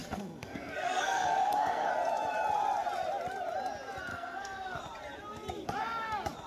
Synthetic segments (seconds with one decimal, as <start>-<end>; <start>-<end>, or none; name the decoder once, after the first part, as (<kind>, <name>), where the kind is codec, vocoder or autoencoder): 0.0-1.9 (codec, SNAC); 4.1-4.8